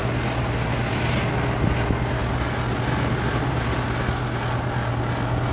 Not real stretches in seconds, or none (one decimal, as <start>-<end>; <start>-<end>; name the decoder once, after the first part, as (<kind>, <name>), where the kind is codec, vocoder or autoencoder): none